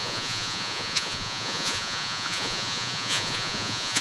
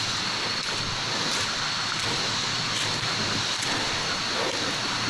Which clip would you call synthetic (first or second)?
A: first